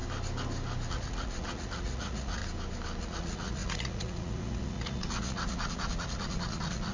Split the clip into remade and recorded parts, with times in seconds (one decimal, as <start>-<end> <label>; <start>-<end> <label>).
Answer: 0.0-0.9 recorded; 0.9-2.4 remade; 2.4-3.0 recorded; 3.0-6.9 remade